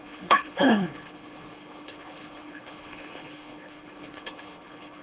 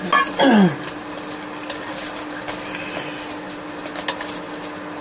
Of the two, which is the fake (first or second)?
first